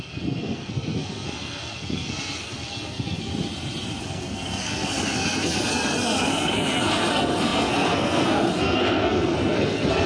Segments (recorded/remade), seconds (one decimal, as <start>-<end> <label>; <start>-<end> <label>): 0.0-3.3 remade; 3.3-4.0 recorded; 4.0-10.1 remade